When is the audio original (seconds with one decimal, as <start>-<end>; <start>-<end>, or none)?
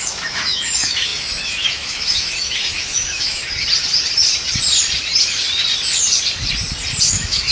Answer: 3.4-7.1